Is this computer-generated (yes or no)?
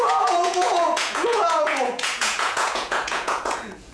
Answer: yes